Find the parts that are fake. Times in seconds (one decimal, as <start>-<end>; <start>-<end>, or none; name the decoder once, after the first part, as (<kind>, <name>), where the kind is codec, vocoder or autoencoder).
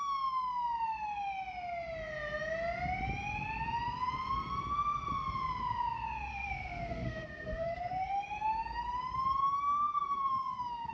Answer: 6.3-8.1 (codec, SNAC); 9.6-10.9